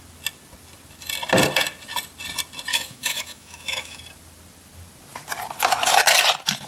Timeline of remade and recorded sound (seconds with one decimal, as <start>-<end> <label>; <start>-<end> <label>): 0.0-2.7 recorded; 2.7-4.0 remade; 4.0-6.7 recorded